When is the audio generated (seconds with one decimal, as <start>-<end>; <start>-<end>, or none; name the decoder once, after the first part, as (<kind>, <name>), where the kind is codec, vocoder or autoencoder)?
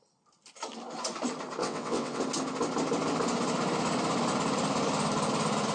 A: 1.6-2.2 (vocoder, WaveNeXt)